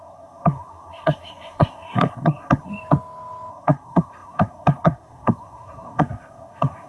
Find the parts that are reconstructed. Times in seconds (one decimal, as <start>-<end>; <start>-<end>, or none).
0.0-2.7; 3.5-6.9